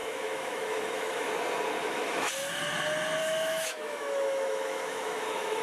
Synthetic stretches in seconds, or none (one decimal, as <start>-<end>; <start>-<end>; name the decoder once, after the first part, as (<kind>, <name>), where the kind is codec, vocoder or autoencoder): 0.0-1.3 (autoencoder, DAC-VAE); 1.8-2.3; 3.2-5.6